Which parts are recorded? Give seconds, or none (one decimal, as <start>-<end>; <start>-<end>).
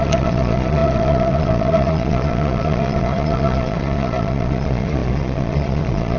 none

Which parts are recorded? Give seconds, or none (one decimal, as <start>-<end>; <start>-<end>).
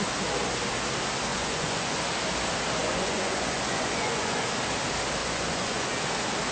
0.0-1.3; 2.0-2.8; 4.4-5.2; 6.0-6.5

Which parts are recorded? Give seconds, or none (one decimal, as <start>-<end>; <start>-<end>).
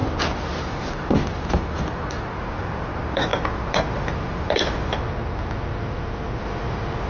0.0-2.4; 5.2-5.8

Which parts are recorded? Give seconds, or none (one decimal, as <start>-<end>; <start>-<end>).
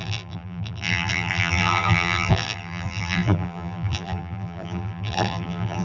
none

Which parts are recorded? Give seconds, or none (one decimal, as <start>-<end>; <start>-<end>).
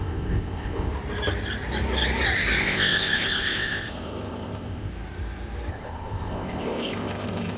0.9-2.6; 4.9-5.7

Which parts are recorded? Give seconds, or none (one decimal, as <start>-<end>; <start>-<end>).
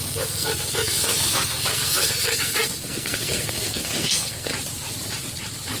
4.5-5.8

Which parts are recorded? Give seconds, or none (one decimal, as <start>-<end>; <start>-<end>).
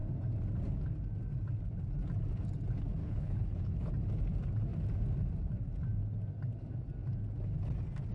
0.0-3.0; 3.9-8.1